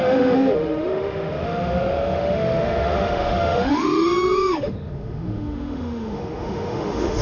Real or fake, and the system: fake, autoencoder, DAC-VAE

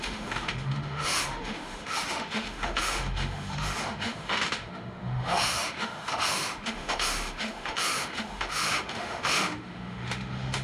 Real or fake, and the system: fake, autoencoder, DAC-VAE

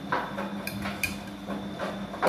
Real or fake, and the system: real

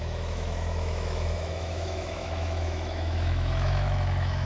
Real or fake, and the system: fake, autoencoder, DAC-VAE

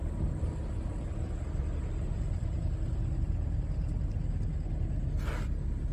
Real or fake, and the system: real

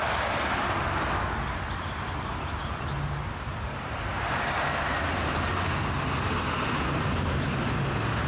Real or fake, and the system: real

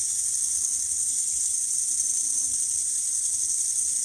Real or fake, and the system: real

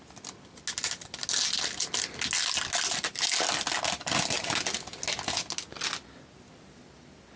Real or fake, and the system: real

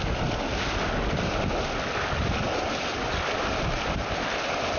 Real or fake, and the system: real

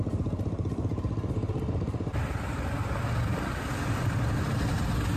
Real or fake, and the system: real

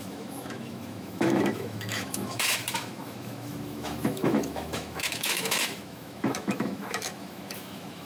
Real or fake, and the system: fake, autoencoder, DAC-VAE